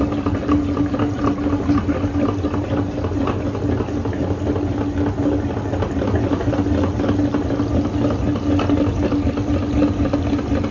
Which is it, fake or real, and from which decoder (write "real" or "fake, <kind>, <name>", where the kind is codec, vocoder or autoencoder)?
real